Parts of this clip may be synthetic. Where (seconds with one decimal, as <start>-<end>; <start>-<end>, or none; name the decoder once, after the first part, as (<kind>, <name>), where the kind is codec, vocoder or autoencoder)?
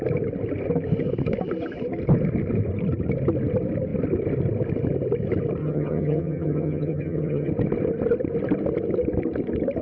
5.6-7.5 (vocoder, HiFi-GAN)